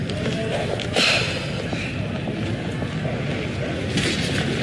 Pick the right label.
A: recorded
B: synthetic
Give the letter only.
A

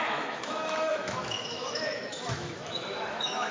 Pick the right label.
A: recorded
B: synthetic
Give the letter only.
B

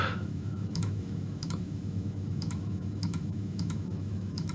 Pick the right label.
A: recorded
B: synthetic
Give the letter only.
B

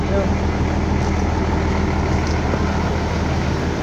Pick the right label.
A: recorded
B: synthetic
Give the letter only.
A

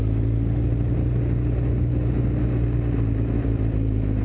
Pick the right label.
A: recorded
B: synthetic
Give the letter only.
A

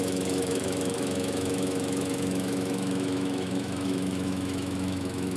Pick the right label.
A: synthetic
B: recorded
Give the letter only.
A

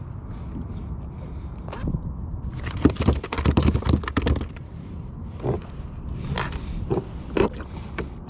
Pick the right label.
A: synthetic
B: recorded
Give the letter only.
B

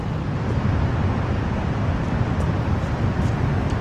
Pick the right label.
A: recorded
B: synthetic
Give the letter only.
A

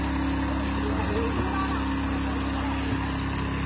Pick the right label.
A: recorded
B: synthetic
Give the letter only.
A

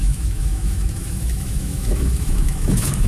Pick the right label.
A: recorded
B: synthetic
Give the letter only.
B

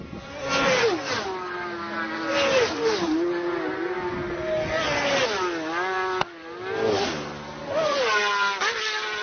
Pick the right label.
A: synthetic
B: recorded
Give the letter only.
B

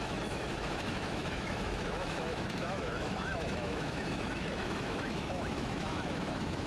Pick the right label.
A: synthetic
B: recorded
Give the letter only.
A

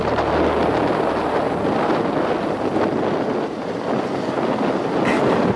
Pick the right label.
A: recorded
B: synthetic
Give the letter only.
A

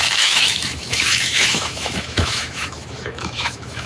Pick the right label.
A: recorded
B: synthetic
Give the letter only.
B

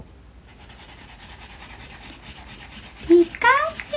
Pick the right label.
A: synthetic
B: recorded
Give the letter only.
B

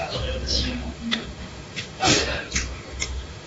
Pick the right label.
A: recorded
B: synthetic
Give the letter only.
B